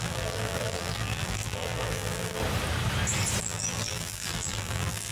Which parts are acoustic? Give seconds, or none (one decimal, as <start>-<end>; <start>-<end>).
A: 2.4-3.4